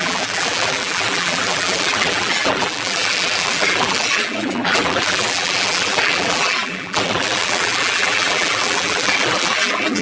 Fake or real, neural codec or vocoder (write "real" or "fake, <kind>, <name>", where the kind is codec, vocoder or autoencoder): fake, vocoder, BigVGAN v2